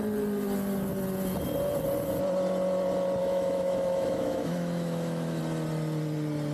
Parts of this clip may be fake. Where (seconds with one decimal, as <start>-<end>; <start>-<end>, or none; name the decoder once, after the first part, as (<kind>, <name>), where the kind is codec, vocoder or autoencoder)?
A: 3.2-5.4 (autoencoder, DAC-VAE)